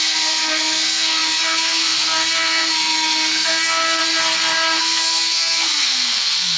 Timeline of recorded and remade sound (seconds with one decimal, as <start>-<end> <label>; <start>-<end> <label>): 0.0-4.0 remade; 4.0-4.8 recorded; 4.8-6.6 remade